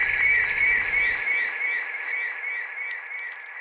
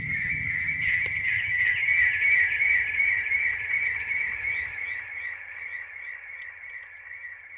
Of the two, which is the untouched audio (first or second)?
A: first